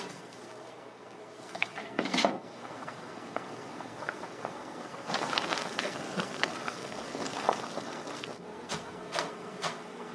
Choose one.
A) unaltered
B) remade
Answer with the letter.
B